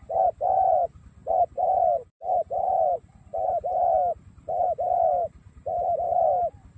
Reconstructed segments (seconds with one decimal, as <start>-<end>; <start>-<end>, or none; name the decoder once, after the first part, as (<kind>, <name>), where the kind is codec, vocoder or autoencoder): none